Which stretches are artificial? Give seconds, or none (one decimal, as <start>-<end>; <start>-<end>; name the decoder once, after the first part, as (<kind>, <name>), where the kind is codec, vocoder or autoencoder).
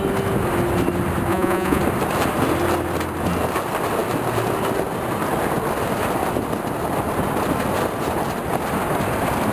1.3-1.8 (vocoder, Vocos)